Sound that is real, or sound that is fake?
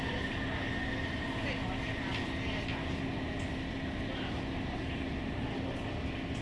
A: real